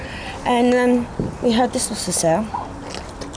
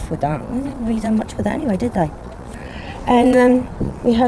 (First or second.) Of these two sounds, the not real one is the second